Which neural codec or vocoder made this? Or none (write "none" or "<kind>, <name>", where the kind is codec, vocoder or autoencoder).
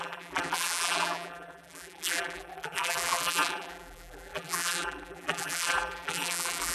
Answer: vocoder, BigVGAN v2